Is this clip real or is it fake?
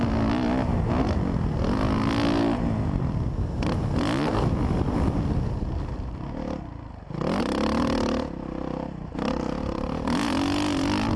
real